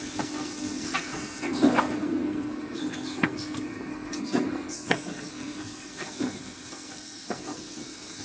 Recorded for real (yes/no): no